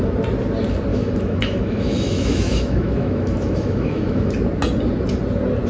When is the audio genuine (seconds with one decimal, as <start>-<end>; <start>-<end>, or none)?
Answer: 0.0-0.9; 4.3-5.7